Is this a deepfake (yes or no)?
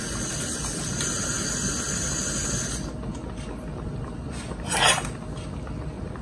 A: no